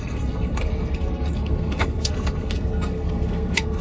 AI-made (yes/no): yes